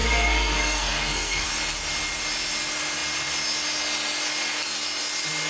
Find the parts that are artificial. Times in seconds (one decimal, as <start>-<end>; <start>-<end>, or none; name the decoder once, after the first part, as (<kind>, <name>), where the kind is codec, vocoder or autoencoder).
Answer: 0.0-1.5 (codec, SNAC)